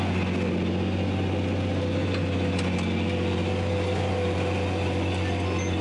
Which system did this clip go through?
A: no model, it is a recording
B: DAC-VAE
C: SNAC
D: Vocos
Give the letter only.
A